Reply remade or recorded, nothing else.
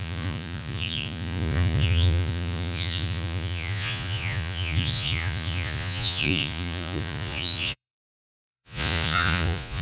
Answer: remade